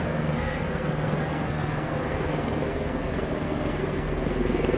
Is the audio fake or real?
fake